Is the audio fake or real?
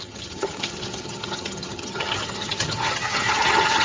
fake